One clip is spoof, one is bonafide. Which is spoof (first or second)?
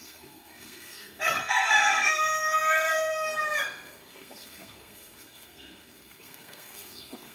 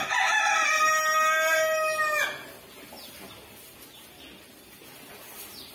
first